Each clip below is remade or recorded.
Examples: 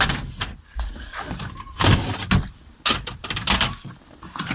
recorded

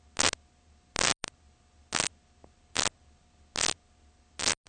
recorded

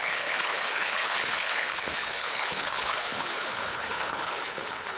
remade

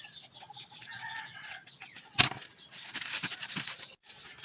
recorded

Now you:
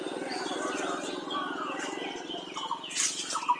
recorded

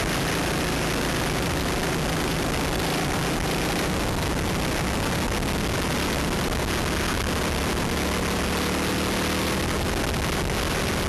recorded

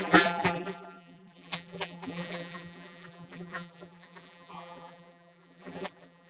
remade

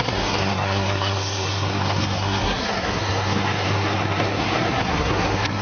remade